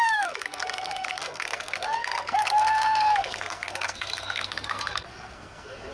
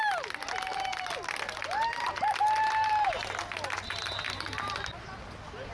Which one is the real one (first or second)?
second